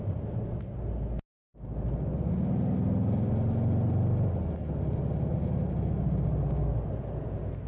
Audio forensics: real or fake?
real